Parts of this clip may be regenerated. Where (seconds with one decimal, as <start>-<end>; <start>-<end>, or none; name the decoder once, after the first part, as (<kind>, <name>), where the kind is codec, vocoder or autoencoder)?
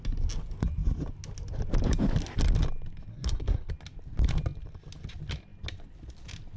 3.1-3.7 (codec, SNAC)